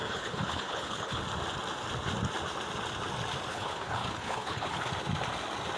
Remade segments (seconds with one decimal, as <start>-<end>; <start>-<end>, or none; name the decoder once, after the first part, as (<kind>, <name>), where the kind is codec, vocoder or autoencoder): 0.0-1.2 (codec, HILCodec); 3.5-4.9